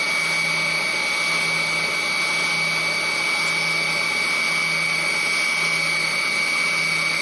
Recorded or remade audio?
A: recorded